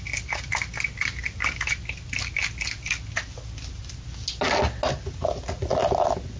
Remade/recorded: recorded